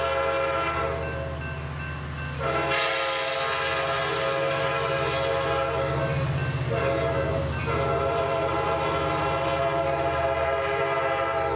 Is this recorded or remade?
recorded